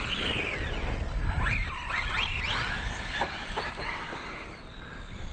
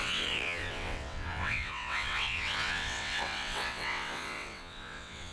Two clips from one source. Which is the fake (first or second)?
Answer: second